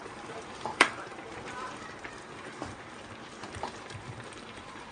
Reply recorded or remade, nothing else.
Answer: remade